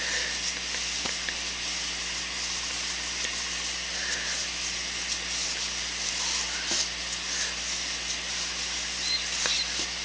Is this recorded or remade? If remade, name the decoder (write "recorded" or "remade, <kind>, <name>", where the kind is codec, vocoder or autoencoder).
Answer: recorded